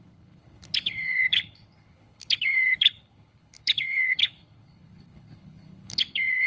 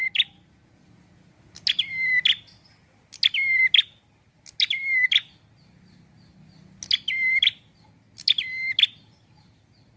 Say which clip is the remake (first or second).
first